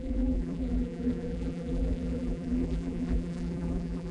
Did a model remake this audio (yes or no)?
yes